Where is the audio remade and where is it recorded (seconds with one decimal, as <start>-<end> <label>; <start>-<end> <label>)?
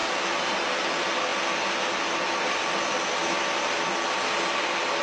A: 0.0-5.0 recorded